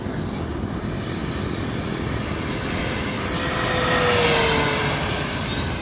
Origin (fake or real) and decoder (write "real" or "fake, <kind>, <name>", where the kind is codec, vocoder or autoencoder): real